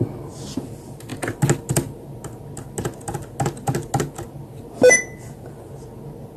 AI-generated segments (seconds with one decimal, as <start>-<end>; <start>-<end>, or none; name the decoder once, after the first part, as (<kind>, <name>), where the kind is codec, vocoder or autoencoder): none